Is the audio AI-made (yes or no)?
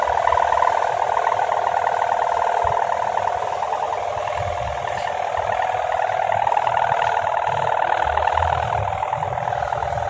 no